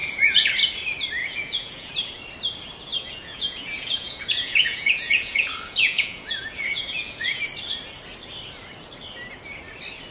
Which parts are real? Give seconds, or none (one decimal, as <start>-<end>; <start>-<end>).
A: 0.5-1.2; 1.9-2.9; 7.4-10.1